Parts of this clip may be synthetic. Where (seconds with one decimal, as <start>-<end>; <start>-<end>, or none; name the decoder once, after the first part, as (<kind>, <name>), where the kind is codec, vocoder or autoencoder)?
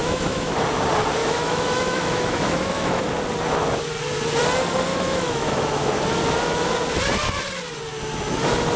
0.0-0.6 (autoencoder, DAC-VAE); 1.2-3.0; 4.9-6.0